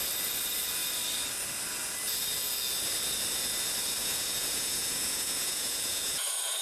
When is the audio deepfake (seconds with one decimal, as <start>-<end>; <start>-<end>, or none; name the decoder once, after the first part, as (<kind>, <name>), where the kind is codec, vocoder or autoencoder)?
4.0-6.6 (vocoder, Vocos)